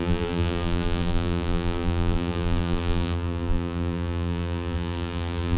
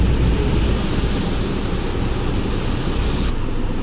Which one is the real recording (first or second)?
second